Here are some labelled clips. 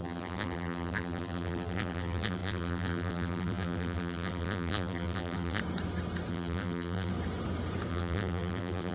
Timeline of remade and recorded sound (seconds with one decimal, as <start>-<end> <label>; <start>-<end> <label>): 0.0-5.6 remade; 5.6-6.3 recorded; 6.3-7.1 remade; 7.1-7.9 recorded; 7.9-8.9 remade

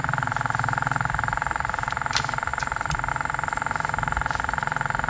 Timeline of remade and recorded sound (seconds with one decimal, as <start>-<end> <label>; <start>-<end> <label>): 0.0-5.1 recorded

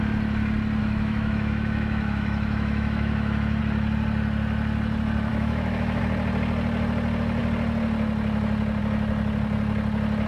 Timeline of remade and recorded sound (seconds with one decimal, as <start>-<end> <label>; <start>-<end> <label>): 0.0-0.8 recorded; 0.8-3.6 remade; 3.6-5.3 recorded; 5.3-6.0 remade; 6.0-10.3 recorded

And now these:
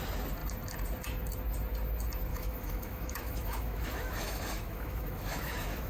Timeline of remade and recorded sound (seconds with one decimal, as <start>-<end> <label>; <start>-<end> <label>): 0.0-2.3 recorded; 2.3-5.9 remade

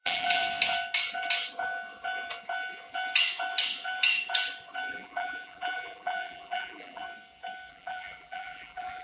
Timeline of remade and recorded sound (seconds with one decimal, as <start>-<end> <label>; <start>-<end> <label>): 0.0-0.4 remade; 0.4-4.9 recorded; 4.9-7.0 remade; 7.0-7.7 recorded; 7.7-9.0 remade

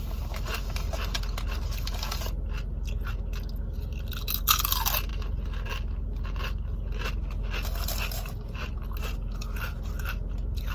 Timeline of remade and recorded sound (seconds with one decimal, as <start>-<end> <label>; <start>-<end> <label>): 0.0-10.7 recorded